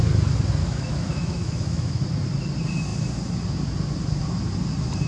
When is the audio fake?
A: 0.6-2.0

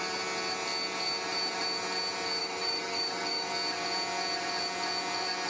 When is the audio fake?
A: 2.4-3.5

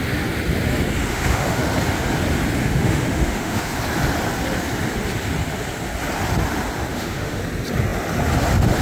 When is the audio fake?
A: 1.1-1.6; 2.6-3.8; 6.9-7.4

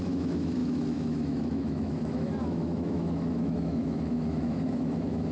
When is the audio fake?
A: 0.0-5.3

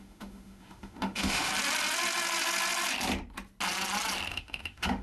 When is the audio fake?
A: 0.0-1.5; 4.3-5.0

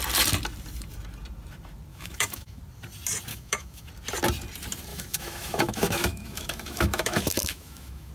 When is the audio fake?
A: 1.9-2.6; 3.3-3.9; 4.9-8.1

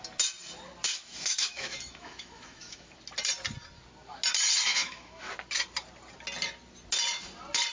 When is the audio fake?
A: 0.9-2.9; 4.7-5.3